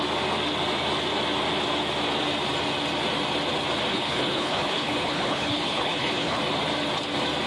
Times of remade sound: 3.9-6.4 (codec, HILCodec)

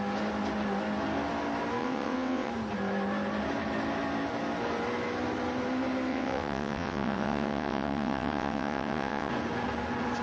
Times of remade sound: 1.8-2.5 (vocoder, WaveNeXt); 6.1-9.3

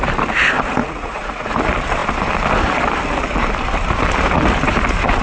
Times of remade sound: 0.8-1.5 (vocoder, Vocos)

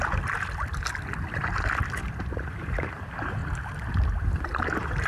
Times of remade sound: 2.2-3.4 (vocoder, BigVGAN v2); 4.6-5.1

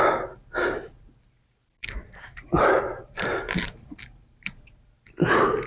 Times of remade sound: 1.8-5.0 (vocoder, BigVGAN v2)

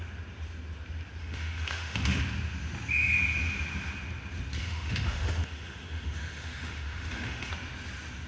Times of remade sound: 1.2-2.2 (autoencoder, DAC-VAE); 4.6-7.5

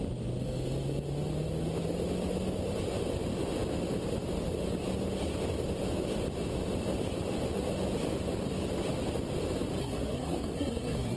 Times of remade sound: 9.8-11.2 (codec, SNAC)

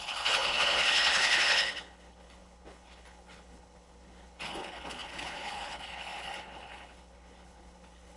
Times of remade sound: 0.0-8.2 (codec, HILCodec)